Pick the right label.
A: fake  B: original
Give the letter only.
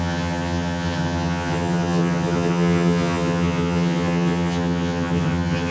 A